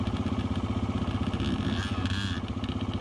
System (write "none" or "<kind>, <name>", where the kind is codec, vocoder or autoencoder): none